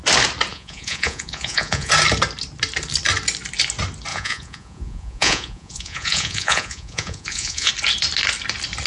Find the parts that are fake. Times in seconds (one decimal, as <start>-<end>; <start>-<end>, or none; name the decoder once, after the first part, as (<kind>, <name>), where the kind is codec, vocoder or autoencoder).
0.5-1.9 (vocoder, Vocos); 4.1-7.7